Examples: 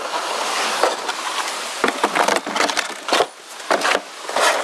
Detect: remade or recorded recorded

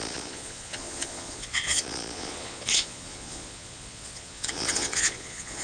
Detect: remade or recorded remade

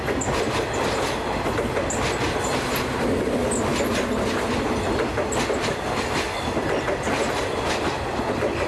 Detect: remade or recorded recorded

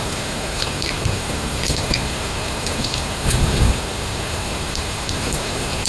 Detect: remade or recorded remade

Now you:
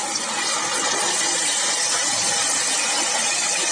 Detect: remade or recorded recorded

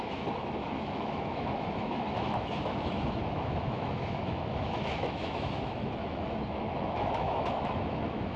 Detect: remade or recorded remade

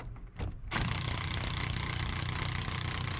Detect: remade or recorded recorded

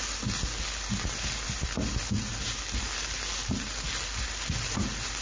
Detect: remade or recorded recorded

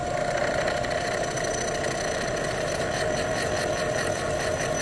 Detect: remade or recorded recorded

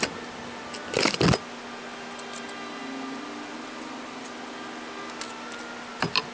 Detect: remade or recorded recorded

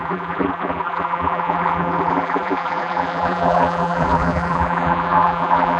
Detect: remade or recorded remade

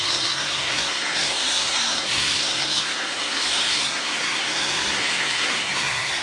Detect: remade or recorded remade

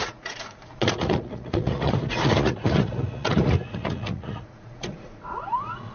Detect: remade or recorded remade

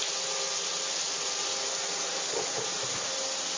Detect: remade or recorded recorded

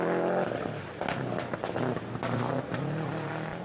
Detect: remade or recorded recorded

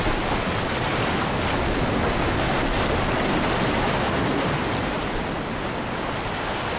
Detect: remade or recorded recorded